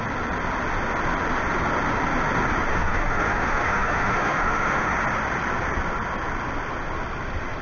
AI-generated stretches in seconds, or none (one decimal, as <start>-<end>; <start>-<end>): 2.7-4.9